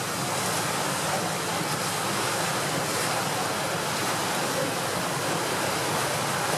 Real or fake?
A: real